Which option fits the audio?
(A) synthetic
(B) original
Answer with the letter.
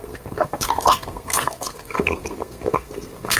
A